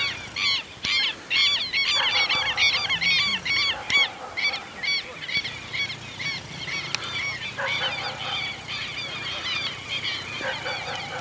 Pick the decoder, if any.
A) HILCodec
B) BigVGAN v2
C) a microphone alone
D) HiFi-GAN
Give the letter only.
C